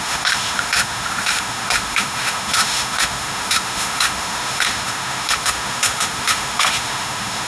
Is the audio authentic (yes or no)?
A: no